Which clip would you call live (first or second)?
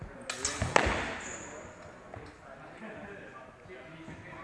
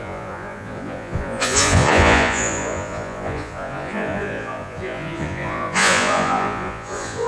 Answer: first